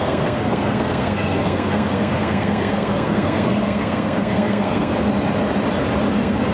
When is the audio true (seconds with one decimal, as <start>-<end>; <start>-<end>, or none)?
4.9-6.1